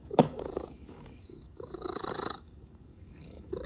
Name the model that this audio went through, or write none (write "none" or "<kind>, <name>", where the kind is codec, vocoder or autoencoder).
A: codec, DAC